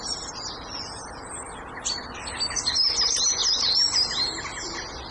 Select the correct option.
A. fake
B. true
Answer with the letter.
B